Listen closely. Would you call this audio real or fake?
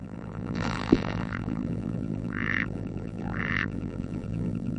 fake